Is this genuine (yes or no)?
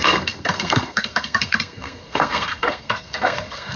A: no